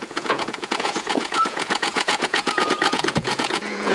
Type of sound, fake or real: fake